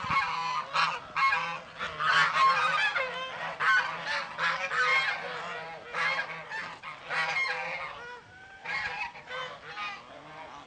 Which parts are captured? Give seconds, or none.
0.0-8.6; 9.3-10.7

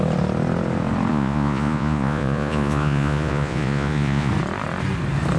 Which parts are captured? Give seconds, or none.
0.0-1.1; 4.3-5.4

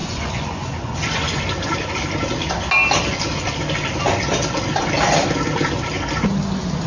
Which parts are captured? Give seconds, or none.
1.4-6.9

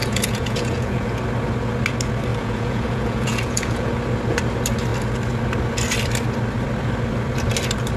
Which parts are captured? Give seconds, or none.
1.2-2.3; 3.9-8.0

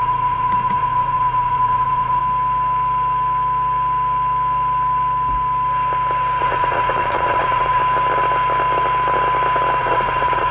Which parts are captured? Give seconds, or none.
2.2-6.4; 7.8-9.8

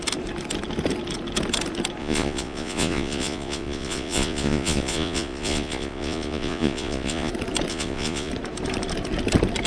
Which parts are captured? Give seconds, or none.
0.0-2.0; 7.3-7.7; 8.3-9.7

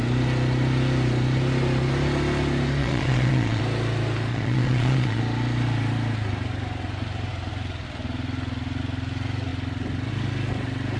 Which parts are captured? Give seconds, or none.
0.0-2.8; 3.6-4.3; 5.2-11.0

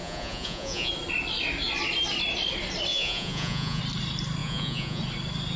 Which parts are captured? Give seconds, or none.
0.9-2.9; 3.8-4.4; 5.0-5.6